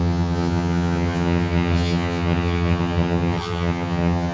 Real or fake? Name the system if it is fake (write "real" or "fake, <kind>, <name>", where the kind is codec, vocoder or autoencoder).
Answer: fake, vocoder, HiFi-GAN